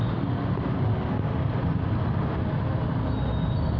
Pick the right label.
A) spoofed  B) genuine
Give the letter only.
B